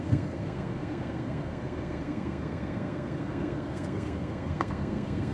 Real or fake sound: fake